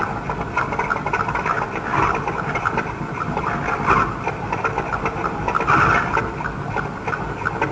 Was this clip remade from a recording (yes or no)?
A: no